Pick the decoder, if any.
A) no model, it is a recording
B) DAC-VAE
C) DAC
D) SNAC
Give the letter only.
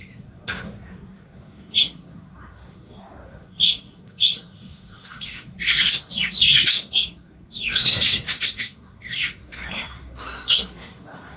D